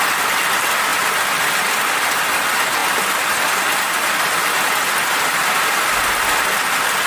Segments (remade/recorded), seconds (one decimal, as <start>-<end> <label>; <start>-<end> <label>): 0.0-7.1 recorded